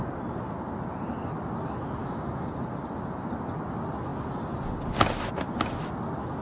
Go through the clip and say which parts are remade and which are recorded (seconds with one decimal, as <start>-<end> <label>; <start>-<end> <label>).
0.0-2.0 recorded; 2.0-2.5 remade; 2.5-6.4 recorded